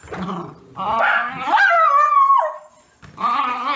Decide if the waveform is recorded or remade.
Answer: recorded